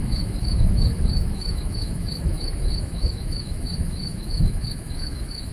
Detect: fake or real fake